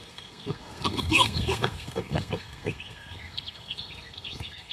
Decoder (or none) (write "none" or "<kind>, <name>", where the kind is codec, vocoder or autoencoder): codec, SNAC